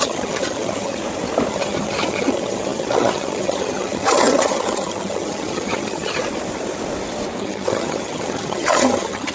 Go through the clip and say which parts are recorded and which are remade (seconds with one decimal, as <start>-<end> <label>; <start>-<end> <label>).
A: 0.0-1.0 remade; 1.0-1.5 recorded; 1.5-6.2 remade; 6.2-7.4 recorded; 7.4-9.3 remade